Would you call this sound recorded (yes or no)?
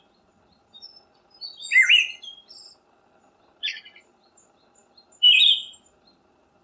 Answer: yes